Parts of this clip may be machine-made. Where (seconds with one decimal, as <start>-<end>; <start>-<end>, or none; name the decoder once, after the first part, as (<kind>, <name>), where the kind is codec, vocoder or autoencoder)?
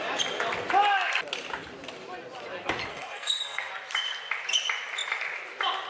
2.9-3.7 (codec, SNAC)